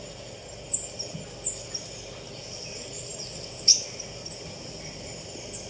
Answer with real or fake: real